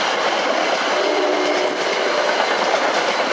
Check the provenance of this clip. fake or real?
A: real